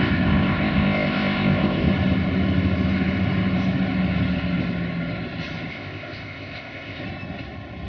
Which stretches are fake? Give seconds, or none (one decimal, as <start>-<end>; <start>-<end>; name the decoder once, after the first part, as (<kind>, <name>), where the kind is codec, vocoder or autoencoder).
0.0-1.9 (codec, ZipCodec); 5.7-7.0